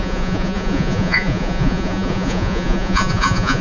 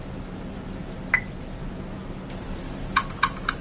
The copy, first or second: first